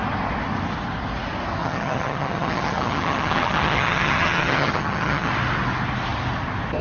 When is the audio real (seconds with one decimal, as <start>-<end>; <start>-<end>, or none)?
0.0-1.6; 5.3-6.8